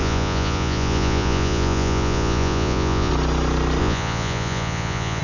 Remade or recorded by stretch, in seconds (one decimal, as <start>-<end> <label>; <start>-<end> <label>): 0.0-3.1 remade; 3.1-3.8 recorded; 3.8-5.2 remade